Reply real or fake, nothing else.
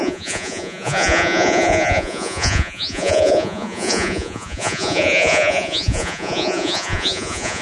fake